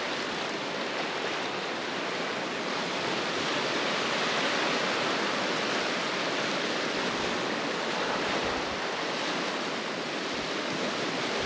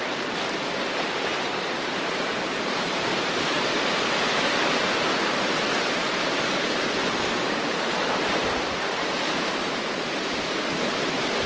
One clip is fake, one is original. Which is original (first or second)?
first